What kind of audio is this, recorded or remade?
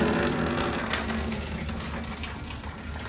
recorded